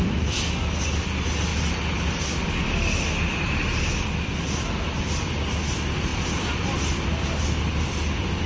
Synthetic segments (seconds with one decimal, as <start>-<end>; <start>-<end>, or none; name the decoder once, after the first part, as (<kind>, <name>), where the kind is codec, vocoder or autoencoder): none